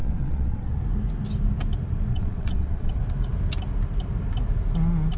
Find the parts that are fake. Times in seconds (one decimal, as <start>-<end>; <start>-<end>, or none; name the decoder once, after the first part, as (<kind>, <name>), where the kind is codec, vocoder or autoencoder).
0.0-0.8 (vocoder, WaveNeXt); 2.1-3.0